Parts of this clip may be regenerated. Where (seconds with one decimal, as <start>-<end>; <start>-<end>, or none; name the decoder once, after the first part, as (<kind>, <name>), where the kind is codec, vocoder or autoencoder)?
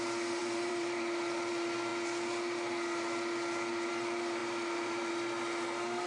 0.4-1.5 (vocoder, BigVGAN v2); 4.4-5.1